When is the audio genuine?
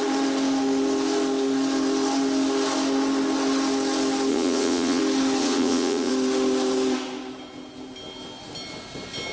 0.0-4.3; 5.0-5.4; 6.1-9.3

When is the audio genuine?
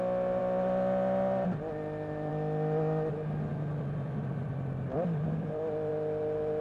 0.0-3.5; 4.5-4.9; 5.9-6.6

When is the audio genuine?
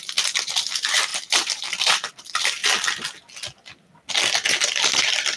2.6-5.4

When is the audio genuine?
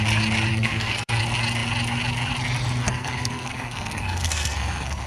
0.0-0.5; 1.2-2.8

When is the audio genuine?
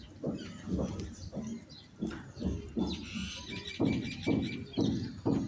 0.0-5.5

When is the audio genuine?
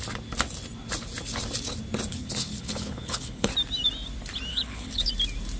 0.0-2.1; 3.5-4.5; 5.1-5.6